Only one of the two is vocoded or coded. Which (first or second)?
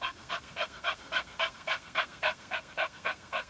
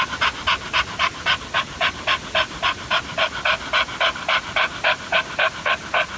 first